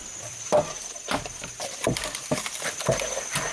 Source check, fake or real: fake